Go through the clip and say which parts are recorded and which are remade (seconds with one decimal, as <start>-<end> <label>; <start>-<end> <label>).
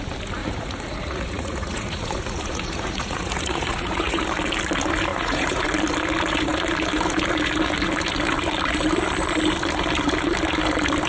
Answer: 0.0-0.4 recorded; 0.4-4.2 remade; 4.2-5.1 recorded; 5.1-5.6 remade; 5.6-11.1 recorded